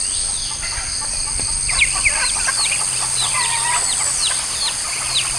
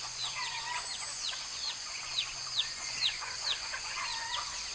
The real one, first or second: first